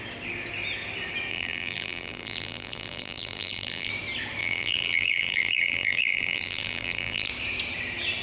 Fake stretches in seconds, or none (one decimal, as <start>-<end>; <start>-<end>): 1.3-3.9; 4.4-7.3